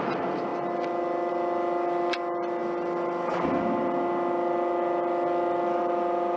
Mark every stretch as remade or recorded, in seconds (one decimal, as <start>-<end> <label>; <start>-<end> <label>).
0.0-6.4 recorded